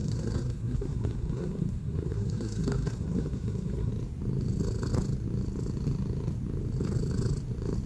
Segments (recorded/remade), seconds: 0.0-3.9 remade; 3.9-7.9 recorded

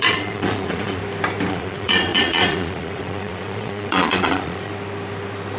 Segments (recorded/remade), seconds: 0.0-1.0 remade; 1.0-1.5 recorded; 1.5-4.7 remade; 4.7-5.6 recorded

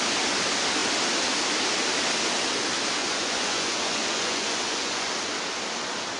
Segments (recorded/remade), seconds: 0.0-3.0 recorded; 3.0-5.1 remade; 5.1-6.2 recorded

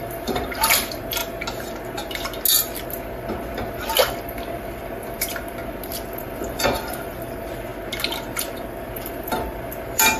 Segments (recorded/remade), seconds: 0.0-1.2 remade; 1.2-4.2 recorded; 4.2-5.6 remade; 5.6-6.2 recorded; 6.2-7.7 remade; 7.7-8.3 recorded; 8.3-10.2 remade

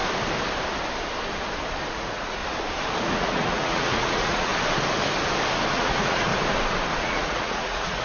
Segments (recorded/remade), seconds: 0.0-1.9 recorded; 1.9-2.4 remade; 2.4-3.0 recorded; 3.0-4.5 remade; 4.5-5.7 recorded; 5.7-6.3 remade; 6.3-7.0 recorded; 7.0-8.0 remade

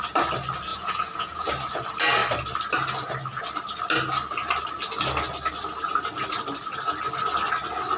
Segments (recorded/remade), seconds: 0.0-0.7 recorded; 0.7-1.5 remade; 1.5-8.0 recorded